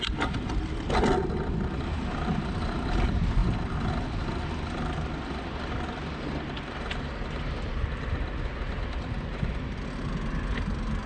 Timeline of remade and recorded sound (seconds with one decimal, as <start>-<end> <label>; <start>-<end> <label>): 0.0-11.1 recorded